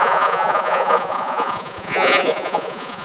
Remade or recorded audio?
remade